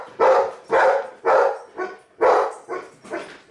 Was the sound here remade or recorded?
recorded